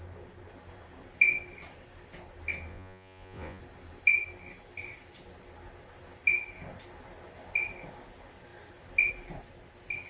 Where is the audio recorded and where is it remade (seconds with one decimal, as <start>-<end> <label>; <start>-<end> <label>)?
0.0-2.7 recorded; 2.7-3.6 remade; 3.6-10.1 recorded

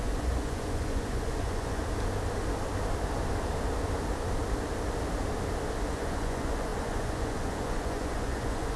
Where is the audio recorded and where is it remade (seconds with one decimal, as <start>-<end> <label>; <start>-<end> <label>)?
0.0-1.8 remade; 1.8-5.9 recorded; 5.9-8.8 remade

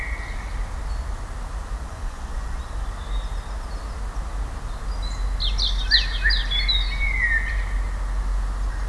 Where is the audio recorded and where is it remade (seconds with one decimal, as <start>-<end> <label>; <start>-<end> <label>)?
0.0-1.9 recorded; 1.9-2.6 remade; 2.6-8.9 recorded

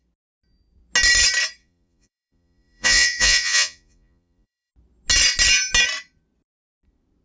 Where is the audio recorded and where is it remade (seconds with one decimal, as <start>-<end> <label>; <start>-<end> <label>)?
0.0-1.6 recorded; 1.6-4.7 remade; 4.7-7.2 recorded

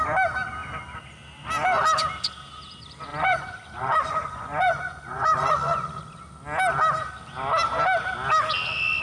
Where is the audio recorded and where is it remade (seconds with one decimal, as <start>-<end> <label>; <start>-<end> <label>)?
0.0-3.1 recorded; 3.1-6.0 remade; 6.0-9.0 recorded

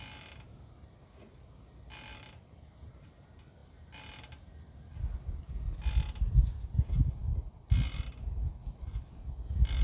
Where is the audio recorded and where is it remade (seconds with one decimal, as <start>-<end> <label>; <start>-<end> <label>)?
0.0-9.8 recorded

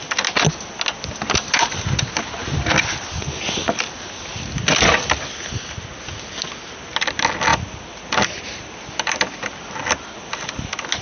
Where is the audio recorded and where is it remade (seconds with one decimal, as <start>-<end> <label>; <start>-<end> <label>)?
0.0-11.0 recorded

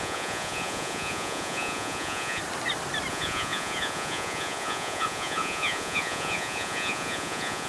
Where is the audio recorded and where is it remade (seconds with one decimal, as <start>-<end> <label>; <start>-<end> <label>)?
0.0-2.4 remade; 2.4-3.1 recorded; 3.1-7.7 remade